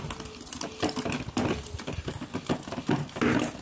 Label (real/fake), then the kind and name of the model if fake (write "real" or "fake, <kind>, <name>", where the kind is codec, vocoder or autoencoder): real